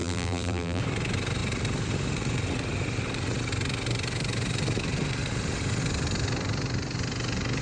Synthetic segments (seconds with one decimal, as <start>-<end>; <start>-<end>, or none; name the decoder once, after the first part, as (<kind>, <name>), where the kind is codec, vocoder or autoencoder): 0.0-0.8 (vocoder, BigVGAN v2)